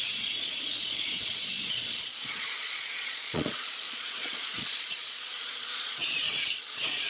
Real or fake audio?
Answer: fake